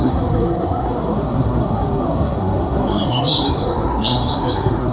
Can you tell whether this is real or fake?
fake